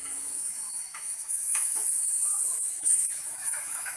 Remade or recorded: remade